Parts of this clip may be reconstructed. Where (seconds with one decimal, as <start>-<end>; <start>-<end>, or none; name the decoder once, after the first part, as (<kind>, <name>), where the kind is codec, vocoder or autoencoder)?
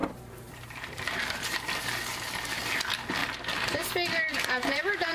0.0-1.6 (vocoder, BigVGAN v2); 3.2-3.9; 4.3-5.1